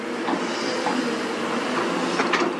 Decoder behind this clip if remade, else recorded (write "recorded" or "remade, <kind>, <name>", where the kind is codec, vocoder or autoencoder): recorded